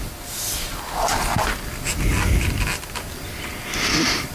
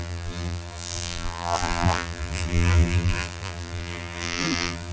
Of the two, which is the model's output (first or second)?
second